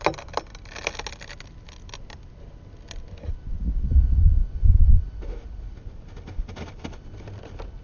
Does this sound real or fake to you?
real